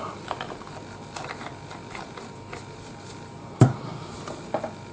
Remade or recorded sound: recorded